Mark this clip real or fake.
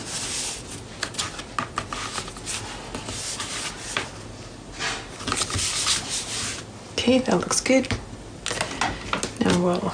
real